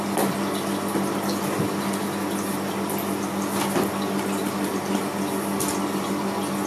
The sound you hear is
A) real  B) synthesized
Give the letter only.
A